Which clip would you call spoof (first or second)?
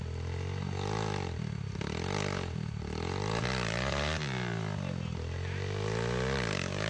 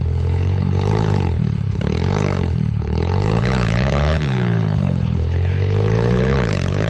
second